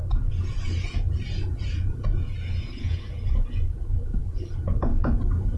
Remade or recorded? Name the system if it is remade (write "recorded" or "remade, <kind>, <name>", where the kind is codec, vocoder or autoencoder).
remade, vocoder, Vocos